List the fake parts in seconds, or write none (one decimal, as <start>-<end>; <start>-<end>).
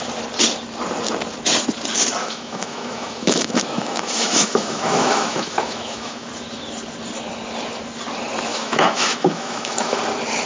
2.2-6.3; 8.5-10.0